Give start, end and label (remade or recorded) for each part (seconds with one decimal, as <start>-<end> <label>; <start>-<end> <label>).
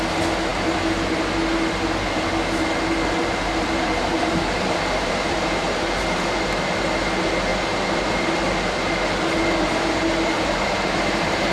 0.0-2.7 recorded; 2.7-6.7 remade; 6.7-7.5 recorded; 7.5-8.3 remade; 8.3-9.4 recorded; 9.4-11.5 remade